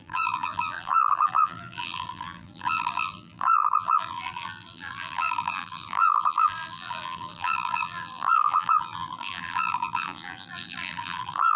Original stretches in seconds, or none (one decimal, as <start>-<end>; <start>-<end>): none